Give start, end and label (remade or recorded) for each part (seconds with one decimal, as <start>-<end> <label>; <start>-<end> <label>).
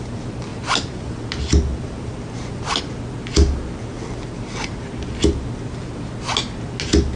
0.0-0.5 recorded; 0.5-2.8 remade; 2.8-7.2 recorded